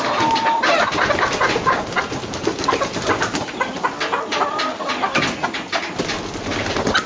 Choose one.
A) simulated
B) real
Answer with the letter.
B